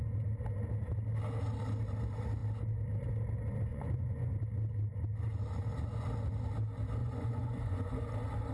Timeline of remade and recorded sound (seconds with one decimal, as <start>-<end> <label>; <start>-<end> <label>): 0.0-3.7 recorded; 3.7-4.3 remade; 4.3-7.0 recorded; 7.0-8.0 remade; 8.0-8.5 recorded